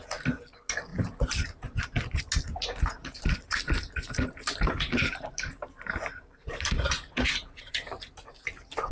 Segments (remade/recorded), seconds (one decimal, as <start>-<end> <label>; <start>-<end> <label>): 0.0-0.9 recorded; 0.9-2.2 remade; 2.2-3.0 recorded; 3.0-8.1 remade; 8.1-8.9 recorded